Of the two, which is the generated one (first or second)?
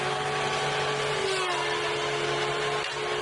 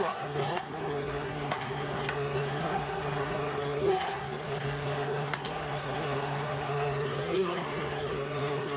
second